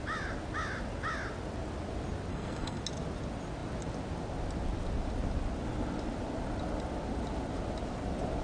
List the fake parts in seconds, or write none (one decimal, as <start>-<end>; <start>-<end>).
2.3-2.8